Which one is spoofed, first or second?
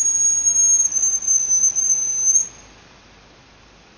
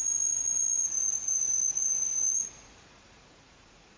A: second